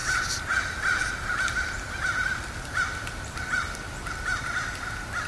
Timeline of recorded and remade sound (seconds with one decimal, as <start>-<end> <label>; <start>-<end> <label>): 0.0-3.2 remade; 3.2-5.3 recorded